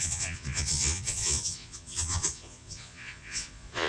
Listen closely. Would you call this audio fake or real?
fake